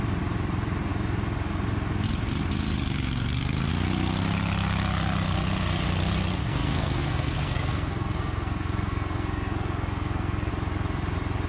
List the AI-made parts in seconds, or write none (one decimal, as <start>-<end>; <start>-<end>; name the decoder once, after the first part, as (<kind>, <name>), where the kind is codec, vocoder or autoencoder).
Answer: 6.4-10.5 (codec, SNAC)